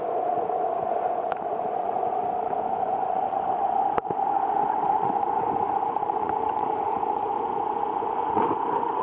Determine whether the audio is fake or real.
fake